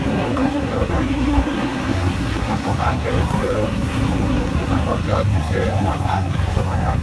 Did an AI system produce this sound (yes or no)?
yes